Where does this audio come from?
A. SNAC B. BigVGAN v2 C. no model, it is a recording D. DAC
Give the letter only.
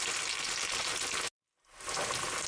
C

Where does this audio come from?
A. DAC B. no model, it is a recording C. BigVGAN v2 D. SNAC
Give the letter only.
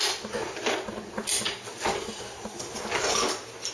B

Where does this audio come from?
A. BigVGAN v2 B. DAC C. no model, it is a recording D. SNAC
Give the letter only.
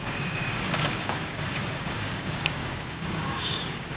B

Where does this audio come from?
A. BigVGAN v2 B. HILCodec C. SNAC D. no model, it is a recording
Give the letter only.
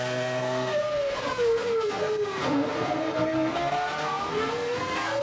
C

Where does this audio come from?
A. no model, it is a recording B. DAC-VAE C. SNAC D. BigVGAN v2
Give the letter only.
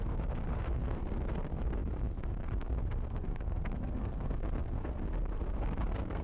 C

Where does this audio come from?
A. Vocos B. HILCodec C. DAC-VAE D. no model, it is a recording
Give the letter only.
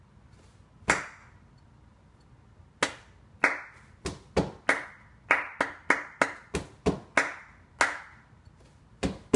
D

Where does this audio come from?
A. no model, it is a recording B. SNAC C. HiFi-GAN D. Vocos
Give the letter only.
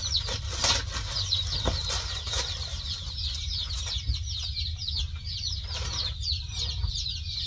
A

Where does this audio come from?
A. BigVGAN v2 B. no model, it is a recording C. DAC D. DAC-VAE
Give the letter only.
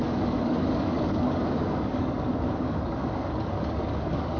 C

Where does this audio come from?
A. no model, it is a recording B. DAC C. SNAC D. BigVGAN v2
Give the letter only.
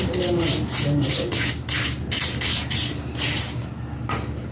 A